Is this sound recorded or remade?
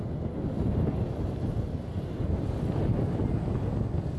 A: recorded